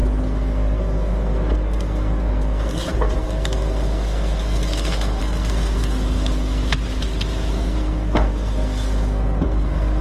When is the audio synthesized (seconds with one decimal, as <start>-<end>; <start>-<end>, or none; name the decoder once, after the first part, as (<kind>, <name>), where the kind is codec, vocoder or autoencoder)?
0.0-6.6 (codec, SNAC); 7.5-10.0